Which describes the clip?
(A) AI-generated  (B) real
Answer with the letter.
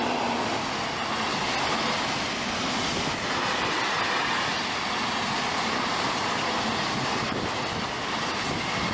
B